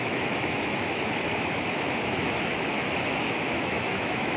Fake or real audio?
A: fake